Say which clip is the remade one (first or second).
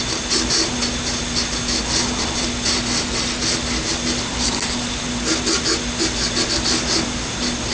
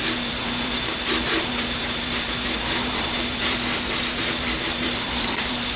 second